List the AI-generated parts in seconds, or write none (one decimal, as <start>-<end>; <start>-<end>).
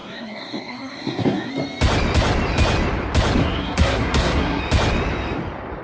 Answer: 0.0-1.5; 3.4-4.6